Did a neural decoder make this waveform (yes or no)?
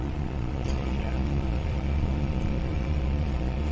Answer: yes